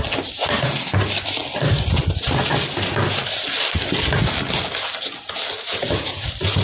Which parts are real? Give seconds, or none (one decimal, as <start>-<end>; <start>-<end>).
0.0-6.6